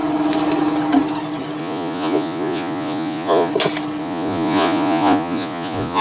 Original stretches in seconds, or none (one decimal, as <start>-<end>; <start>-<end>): 0.0-1.6; 3.5-4.0